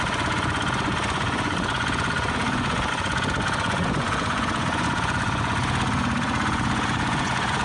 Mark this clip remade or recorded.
remade